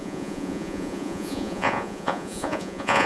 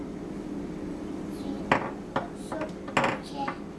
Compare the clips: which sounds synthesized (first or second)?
first